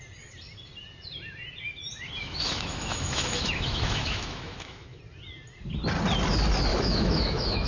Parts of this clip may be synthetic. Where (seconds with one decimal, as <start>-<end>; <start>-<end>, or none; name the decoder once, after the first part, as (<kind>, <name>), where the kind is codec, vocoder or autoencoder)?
2.2-5.0 (autoencoder, DAC-VAE); 6.7-7.7